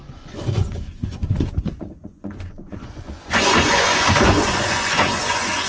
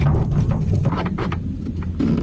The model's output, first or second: first